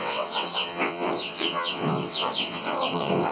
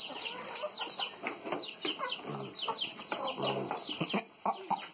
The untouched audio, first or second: second